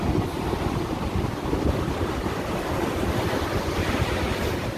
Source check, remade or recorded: recorded